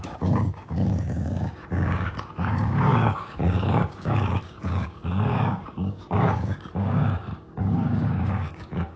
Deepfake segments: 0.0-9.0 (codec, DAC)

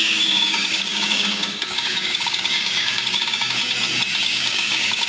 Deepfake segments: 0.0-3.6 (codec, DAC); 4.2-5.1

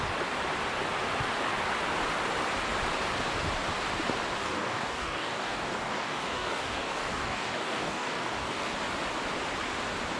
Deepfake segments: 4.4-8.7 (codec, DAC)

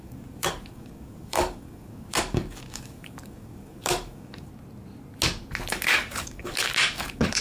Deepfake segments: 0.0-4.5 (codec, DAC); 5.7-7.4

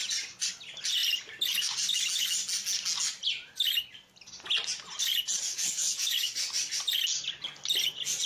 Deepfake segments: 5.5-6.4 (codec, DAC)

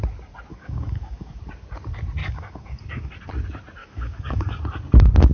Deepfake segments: 0.5-1.4 (codec, DAC); 2.2-3.1; 3.8-4.6